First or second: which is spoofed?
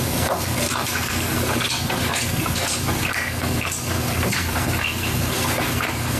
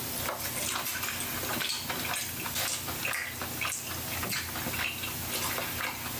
first